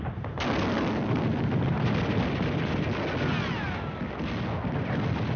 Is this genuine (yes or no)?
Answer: yes